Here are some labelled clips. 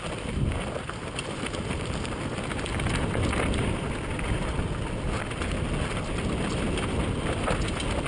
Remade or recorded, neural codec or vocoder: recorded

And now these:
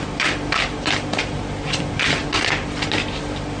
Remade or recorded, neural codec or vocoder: recorded